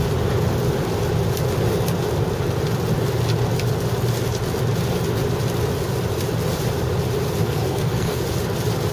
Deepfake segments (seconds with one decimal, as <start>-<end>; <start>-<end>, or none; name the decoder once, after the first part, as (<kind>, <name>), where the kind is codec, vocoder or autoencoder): 7.4-8.2 (codec, SNAC)